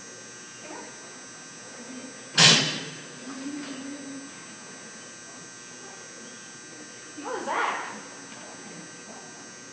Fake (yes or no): no